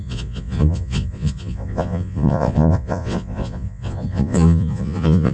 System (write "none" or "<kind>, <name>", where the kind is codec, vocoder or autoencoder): vocoder, Vocos